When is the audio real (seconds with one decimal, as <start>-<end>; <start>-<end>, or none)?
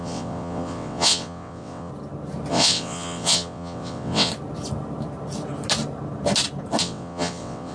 1.9-2.5; 4.3-6.8